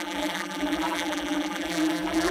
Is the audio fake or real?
fake